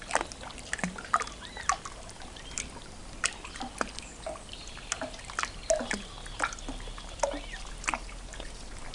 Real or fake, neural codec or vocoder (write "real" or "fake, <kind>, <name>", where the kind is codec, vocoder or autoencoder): real